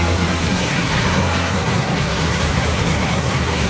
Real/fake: fake